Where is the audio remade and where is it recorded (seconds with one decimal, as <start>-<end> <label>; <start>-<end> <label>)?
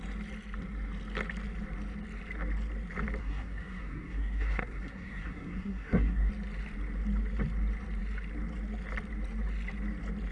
0.0-3.2 recorded; 3.2-6.3 remade; 6.3-10.3 recorded